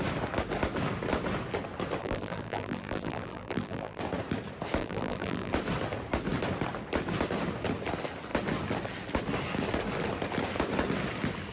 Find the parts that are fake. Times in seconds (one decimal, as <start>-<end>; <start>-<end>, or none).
2.0-4.0; 4.8-5.5